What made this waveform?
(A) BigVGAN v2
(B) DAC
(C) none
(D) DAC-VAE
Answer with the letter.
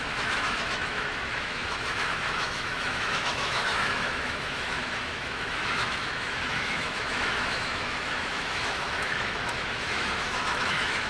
D